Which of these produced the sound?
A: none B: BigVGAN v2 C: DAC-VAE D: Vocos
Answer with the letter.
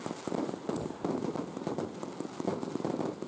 A